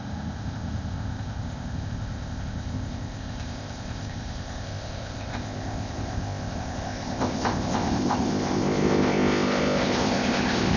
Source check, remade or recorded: remade